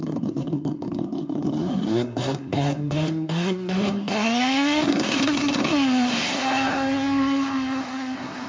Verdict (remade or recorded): remade